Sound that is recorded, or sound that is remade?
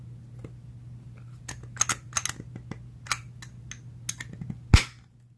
recorded